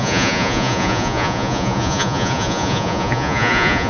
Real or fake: fake